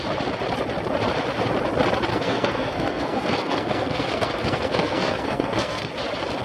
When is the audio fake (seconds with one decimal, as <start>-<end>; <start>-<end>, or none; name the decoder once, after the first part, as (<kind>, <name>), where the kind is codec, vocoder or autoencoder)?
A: 2.1-5.9 (codec, SNAC)